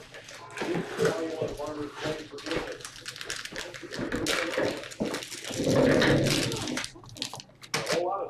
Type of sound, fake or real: real